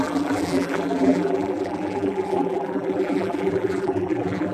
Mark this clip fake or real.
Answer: fake